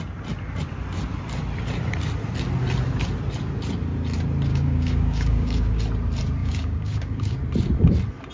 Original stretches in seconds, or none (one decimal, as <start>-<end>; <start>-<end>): 0.0-4.5; 5.8-6.4; 7.4-8.3